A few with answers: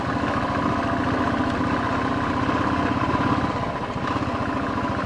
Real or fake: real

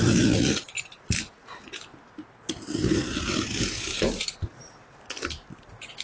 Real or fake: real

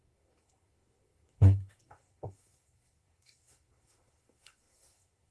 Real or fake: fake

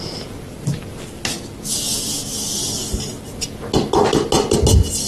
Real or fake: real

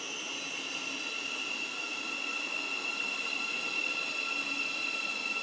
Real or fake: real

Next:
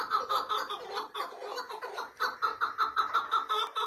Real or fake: real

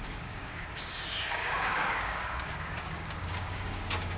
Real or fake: fake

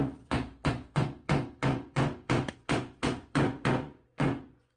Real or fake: fake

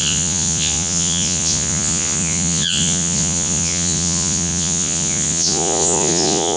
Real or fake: fake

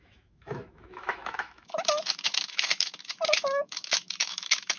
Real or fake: fake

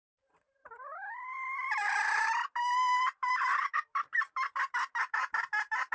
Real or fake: fake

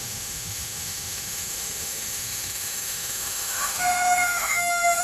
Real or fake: fake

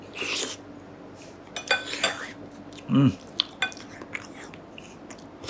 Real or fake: real